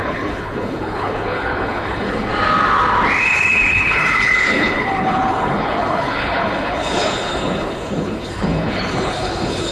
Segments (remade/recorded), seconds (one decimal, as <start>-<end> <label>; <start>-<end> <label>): 0.0-2.3 remade; 2.3-3.2 recorded; 3.2-9.7 remade